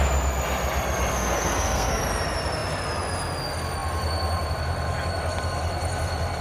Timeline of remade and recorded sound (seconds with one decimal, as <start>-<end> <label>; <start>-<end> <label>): 0.0-1.1 recorded; 1.1-2.0 remade; 2.0-6.4 recorded